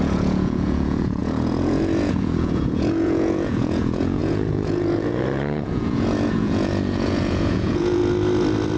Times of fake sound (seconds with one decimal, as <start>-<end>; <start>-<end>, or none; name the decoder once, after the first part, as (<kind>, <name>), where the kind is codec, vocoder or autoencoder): 0.0-8.0 (vocoder, Vocos)